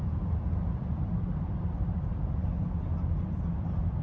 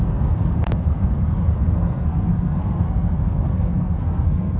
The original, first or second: first